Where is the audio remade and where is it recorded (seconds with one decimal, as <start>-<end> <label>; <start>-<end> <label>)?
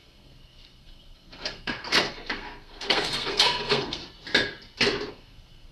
0.0-4.0 remade; 4.0-5.1 recorded; 5.1-5.7 remade